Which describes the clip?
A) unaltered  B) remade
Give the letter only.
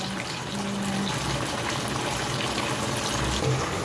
A